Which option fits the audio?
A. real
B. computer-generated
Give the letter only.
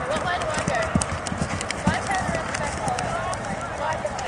B